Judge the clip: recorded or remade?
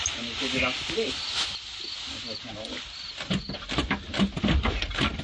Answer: recorded